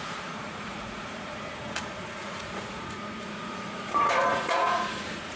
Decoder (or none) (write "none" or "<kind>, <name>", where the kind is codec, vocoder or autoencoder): vocoder, Vocos